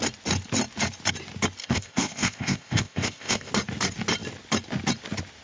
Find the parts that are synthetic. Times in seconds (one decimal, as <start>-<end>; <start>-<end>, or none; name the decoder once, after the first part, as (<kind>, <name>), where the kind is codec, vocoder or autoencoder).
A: 1.6-3.5 (codec, ZipCodec)